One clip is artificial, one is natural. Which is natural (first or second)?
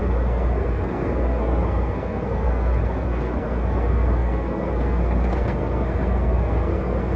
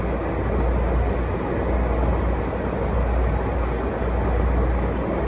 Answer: second